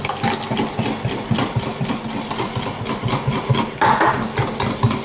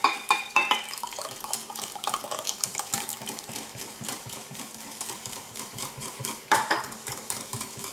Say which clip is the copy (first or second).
second